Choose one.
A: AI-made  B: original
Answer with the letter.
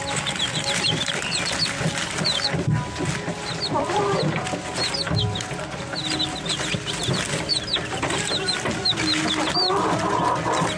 B